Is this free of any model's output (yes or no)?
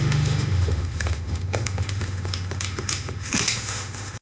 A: no